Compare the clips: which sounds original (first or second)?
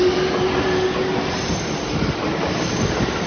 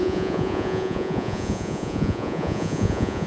first